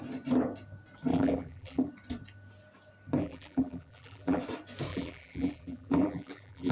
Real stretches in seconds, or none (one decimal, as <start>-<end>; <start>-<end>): 0.0-1.1; 1.9-3.2; 4.4-4.9